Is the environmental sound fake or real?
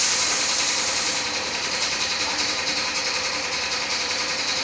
fake